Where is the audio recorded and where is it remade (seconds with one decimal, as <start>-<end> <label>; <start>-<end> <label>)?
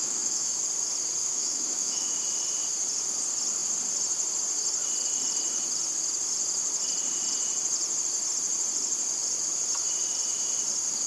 0.0-0.6 remade; 0.6-1.2 recorded; 1.2-2.2 remade; 2.2-11.1 recorded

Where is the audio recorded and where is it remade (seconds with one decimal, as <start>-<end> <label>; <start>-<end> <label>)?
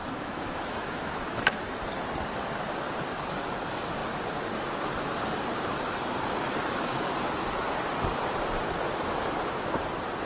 0.0-1.8 remade; 1.8-10.3 recorded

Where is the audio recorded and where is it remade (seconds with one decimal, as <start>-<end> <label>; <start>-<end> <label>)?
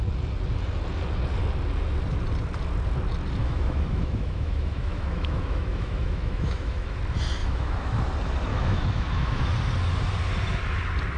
0.0-3.4 recorded; 3.4-7.0 remade; 7.0-7.4 recorded; 7.4-8.1 remade; 8.1-8.5 recorded; 8.5-9.4 remade; 9.4-11.2 recorded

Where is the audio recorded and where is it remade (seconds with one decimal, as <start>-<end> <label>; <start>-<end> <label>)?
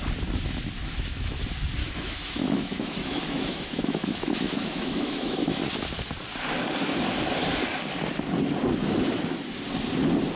0.0-0.8 recorded; 0.8-1.4 remade; 1.4-1.8 recorded; 1.8-5.6 remade; 5.6-10.4 recorded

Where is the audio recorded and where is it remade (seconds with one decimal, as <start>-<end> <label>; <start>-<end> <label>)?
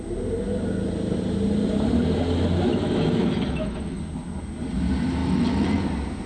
0.0-2.7 recorded; 2.7-4.0 remade; 4.0-5.2 recorded; 5.2-5.8 remade; 5.8-6.3 recorded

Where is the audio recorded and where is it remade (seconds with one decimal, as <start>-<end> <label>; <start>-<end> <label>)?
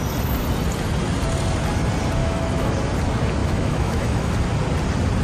0.0-2.2 recorded; 2.2-2.7 remade; 2.7-3.4 recorded; 3.4-4.3 remade; 4.3-5.2 recorded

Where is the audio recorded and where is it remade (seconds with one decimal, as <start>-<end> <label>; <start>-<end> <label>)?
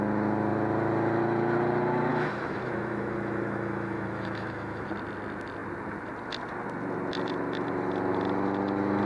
0.0-2.1 recorded; 2.1-4.9 remade; 4.9-9.1 recorded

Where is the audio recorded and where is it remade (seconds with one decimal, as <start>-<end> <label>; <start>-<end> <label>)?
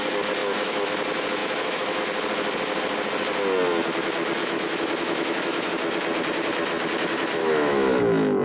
0.0-0.4 recorded; 0.4-1.0 remade; 1.0-1.4 recorded; 1.4-2.0 remade; 2.0-4.4 recorded; 4.4-5.7 remade; 5.7-7.4 recorded; 7.4-8.0 remade; 8.0-8.4 recorded